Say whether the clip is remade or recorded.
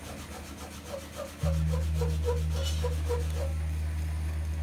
recorded